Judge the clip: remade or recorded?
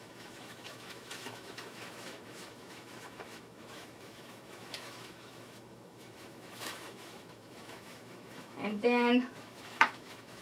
remade